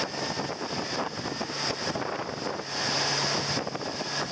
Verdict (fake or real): real